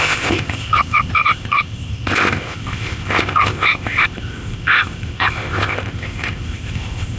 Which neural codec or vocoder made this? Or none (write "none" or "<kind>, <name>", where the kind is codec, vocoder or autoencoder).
codec, ZipCodec